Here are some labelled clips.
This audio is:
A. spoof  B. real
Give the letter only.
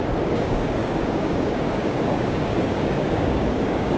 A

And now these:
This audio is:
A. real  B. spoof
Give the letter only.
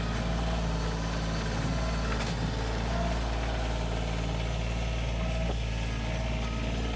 A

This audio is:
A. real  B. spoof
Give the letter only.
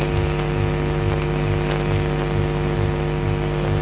A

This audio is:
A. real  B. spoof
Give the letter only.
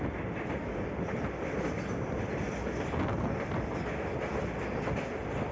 A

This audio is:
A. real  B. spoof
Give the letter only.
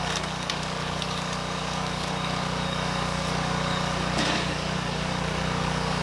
B